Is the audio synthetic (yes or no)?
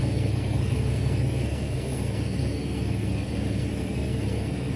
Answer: yes